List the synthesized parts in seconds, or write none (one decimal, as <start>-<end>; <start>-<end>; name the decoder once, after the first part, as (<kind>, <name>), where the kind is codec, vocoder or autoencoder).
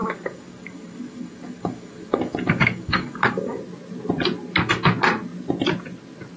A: 0.0-3.6 (codec, DAC)